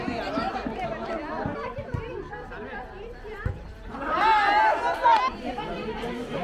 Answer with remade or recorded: recorded